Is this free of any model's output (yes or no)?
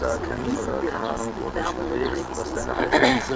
no